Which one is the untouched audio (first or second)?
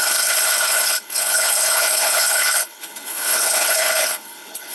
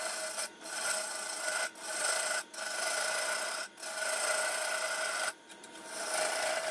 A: second